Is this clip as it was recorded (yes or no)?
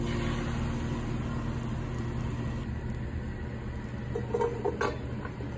yes